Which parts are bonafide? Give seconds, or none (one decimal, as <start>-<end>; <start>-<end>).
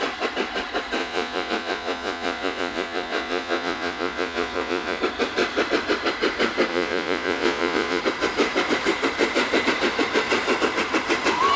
0.0-1.0; 5.0-6.7; 8.0-11.6